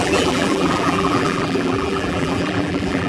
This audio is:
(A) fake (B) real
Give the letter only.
A